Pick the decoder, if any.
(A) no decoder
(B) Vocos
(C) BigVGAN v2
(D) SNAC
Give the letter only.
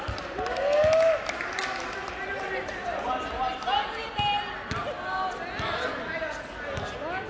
A